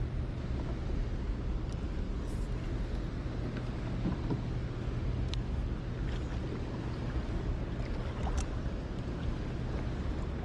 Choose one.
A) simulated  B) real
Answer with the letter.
B